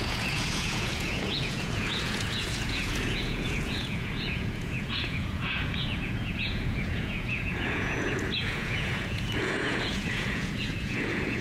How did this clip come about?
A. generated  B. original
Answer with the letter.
A